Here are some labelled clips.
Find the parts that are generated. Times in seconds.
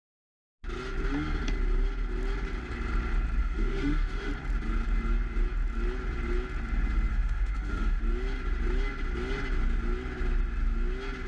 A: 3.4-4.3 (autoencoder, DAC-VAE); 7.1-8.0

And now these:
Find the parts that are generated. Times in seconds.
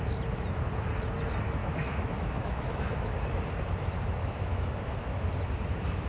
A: 1.6-3.2 (autoencoder, DAC-VAE); 4.2-5.2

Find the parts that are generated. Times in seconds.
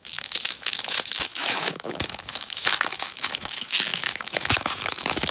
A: 0.0-5.3 (autoencoder, DAC-VAE)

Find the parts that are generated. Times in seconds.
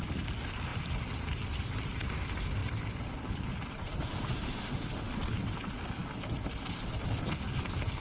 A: 4.2-5.2 (autoencoder, DAC-VAE)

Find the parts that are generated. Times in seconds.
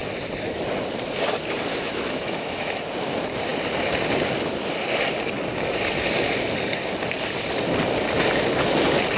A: 1.7-2.8 (autoencoder, DAC-VAE)